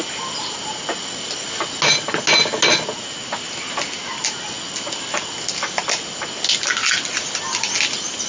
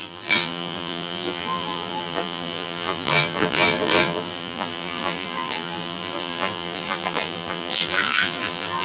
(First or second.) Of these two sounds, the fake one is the second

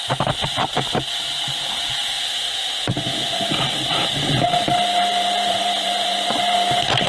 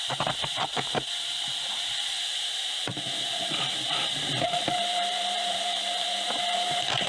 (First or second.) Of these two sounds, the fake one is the second